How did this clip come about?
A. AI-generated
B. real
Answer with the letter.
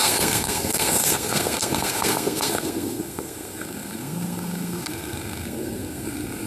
A